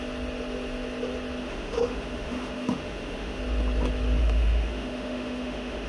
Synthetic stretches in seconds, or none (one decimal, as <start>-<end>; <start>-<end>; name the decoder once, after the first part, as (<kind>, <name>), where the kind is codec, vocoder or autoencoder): 1.4-3.4 (autoencoder, DAC-VAE); 4.2-5.9